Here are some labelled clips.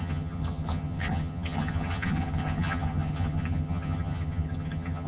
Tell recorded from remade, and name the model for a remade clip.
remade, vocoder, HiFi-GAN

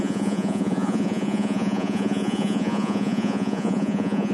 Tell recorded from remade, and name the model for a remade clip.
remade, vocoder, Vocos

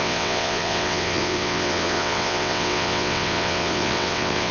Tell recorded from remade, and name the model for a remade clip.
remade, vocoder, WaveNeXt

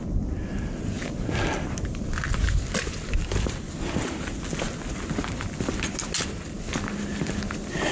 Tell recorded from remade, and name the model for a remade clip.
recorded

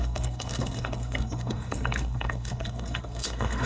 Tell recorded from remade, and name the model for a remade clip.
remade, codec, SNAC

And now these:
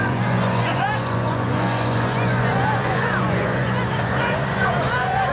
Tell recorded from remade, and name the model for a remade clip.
remade, vocoder, Vocos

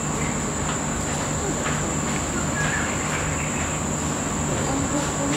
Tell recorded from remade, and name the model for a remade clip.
recorded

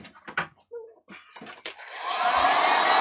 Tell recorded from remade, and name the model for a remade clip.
recorded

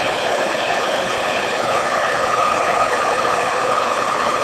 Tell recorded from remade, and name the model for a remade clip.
remade, codec, HILCodec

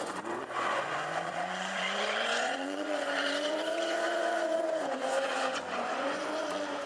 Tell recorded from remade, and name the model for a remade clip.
remade, vocoder, Vocos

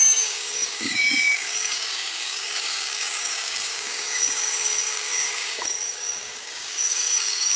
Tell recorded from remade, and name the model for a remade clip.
remade, codec, DAC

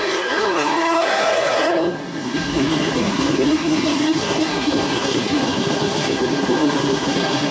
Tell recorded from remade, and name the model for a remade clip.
remade, codec, SNAC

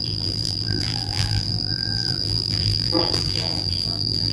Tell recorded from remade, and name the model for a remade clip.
remade, vocoder, BigVGAN v2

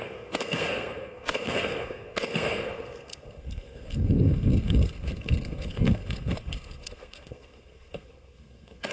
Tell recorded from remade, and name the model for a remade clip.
remade, codec, SNAC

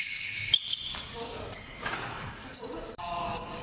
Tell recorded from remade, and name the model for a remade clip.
remade, codec, DAC